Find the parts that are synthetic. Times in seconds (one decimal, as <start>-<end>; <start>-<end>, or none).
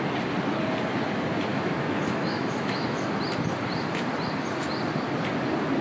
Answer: 1.5-3.2